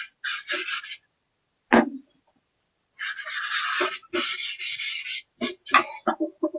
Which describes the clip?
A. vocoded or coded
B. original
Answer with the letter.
B